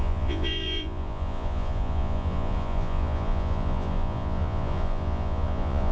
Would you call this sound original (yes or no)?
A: no